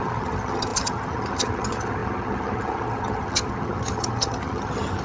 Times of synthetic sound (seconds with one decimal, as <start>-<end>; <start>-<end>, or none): 0.0-5.0